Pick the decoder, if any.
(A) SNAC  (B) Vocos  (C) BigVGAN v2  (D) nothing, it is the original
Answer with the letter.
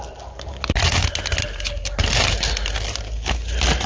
D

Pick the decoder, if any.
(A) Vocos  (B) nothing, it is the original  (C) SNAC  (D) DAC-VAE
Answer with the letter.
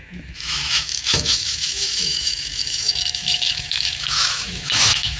D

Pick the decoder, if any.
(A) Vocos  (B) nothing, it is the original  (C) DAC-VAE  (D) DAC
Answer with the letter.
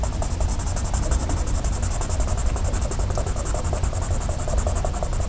B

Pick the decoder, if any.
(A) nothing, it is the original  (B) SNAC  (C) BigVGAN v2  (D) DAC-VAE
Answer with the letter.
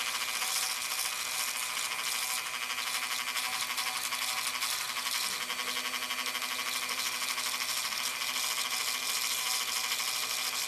A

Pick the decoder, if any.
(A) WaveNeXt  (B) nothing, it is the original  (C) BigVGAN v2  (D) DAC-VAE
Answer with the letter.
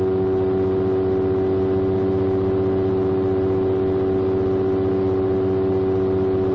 B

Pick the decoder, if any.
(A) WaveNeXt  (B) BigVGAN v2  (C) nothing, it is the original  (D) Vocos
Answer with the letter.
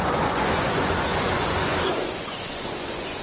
D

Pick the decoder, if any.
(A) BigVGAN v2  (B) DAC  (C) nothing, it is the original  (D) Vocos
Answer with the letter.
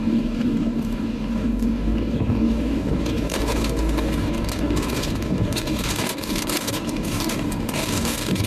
B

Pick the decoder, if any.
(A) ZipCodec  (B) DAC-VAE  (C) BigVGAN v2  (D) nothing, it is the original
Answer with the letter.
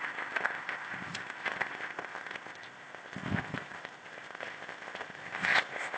A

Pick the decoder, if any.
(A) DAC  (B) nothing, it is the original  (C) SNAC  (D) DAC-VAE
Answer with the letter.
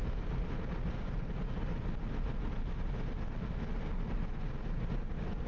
B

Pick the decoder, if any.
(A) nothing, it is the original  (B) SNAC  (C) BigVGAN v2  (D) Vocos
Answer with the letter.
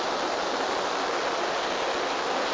A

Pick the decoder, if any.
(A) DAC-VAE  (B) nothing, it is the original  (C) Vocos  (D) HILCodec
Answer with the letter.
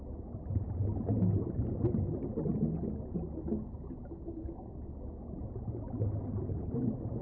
B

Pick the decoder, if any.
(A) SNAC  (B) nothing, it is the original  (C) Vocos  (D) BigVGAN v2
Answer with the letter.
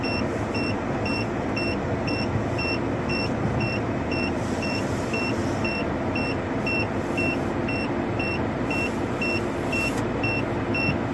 B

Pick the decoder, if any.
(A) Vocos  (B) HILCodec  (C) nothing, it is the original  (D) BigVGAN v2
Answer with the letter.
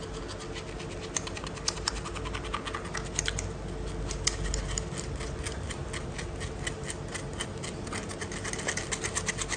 C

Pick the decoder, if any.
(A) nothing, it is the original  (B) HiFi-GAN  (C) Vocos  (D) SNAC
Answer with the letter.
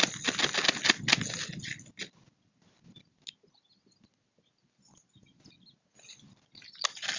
A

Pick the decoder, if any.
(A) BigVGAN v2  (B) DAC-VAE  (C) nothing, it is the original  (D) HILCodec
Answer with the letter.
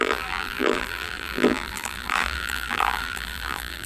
A